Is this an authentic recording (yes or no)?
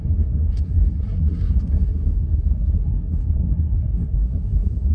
no